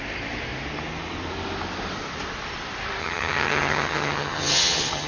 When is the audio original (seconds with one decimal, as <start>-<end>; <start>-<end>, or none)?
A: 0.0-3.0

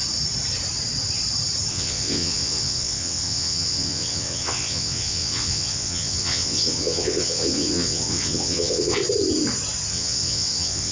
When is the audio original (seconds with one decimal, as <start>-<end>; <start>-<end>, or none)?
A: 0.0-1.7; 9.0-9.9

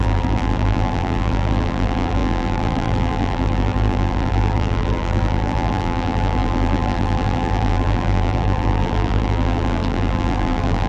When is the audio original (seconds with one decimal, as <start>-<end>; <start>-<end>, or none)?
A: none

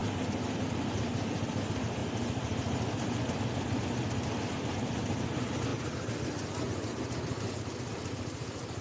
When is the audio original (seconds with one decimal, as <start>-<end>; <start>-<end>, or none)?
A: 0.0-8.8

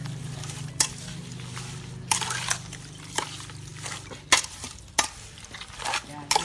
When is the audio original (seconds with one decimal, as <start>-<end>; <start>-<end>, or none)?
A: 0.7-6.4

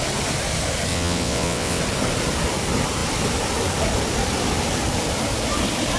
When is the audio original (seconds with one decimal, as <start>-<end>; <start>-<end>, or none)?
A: 0.0-0.9; 1.8-6.0

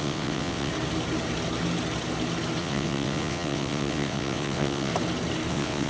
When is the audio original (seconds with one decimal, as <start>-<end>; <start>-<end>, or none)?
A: 0.7-2.6; 4.9-5.5

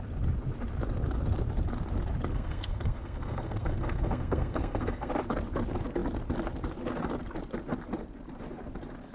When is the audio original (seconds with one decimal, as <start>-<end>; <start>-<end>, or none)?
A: 0.0-2.3; 5.1-9.1